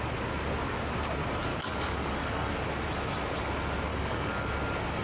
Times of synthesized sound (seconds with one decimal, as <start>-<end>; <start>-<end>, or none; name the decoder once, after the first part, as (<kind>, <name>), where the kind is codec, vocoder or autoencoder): 1.5-2.5 (codec, DAC); 3.9-4.5